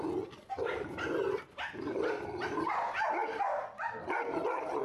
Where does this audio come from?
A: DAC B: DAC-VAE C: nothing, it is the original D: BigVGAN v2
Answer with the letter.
C